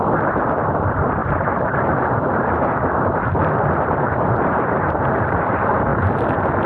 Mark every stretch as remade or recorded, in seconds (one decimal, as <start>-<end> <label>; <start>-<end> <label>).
0.0-5.9 remade; 5.9-6.7 recorded